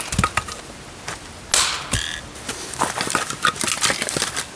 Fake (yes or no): no